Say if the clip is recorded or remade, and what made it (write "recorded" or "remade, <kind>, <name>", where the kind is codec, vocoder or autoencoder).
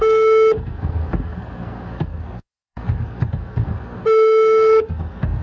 remade, codec, SNAC